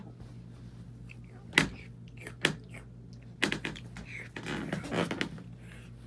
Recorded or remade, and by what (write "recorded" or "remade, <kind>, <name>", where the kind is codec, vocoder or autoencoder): recorded